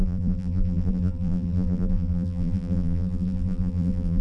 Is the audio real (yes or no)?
no